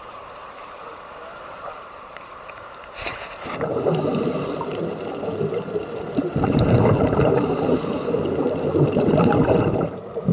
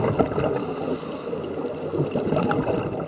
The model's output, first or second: first